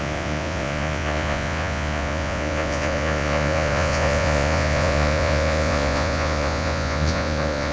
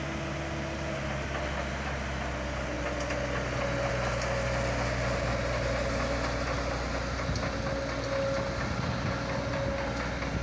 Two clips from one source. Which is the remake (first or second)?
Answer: first